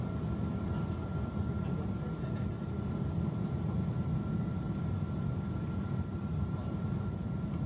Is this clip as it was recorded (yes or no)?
yes